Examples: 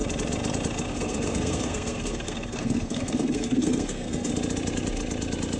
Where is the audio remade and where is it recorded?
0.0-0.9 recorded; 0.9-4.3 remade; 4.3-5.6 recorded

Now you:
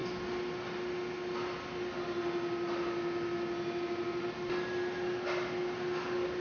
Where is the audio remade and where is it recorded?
0.0-6.4 recorded

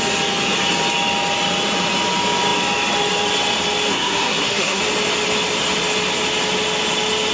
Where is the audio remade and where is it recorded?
0.0-3.9 recorded; 3.9-4.8 remade; 4.8-7.3 recorded

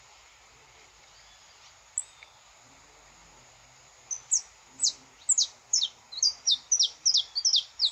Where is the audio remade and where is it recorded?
0.0-7.9 recorded

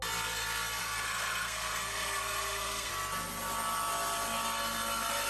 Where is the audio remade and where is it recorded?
0.0-0.8 recorded; 0.8-2.9 remade; 2.9-5.3 recorded

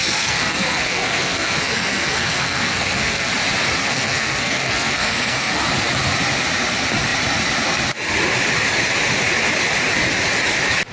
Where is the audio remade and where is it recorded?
0.0-3.3 remade; 3.3-3.8 recorded; 3.8-5.6 remade; 5.6-10.9 recorded